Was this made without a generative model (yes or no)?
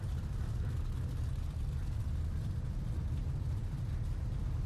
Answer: yes